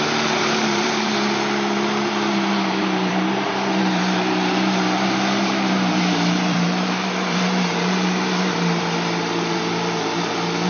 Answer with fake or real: fake